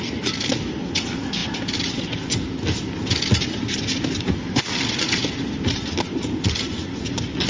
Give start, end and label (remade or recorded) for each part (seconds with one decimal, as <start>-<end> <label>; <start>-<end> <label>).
0.0-7.5 recorded